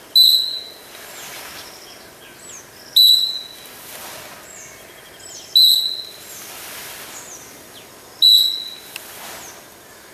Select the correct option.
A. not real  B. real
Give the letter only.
B